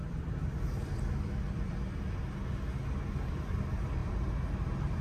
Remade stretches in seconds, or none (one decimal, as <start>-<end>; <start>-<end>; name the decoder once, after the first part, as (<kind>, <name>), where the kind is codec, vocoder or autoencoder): none